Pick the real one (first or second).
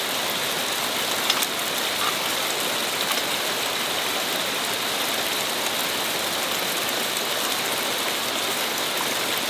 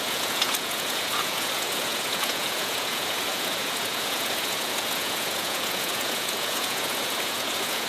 first